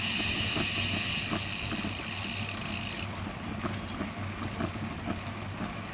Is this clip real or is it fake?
real